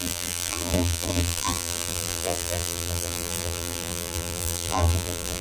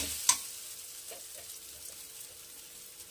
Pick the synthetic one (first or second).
first